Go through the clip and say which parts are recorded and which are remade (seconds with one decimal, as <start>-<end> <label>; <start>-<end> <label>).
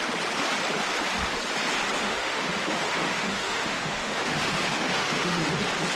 0.0-2.0 recorded; 2.0-5.6 remade; 5.6-6.0 recorded